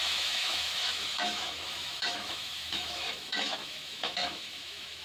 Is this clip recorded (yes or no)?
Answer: no